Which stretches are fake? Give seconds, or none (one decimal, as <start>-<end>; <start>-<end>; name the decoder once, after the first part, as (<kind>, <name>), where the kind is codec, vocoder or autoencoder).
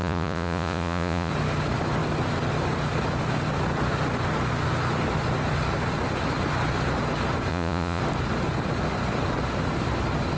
0.0-1.3 (vocoder, Vocos); 7.5-8.0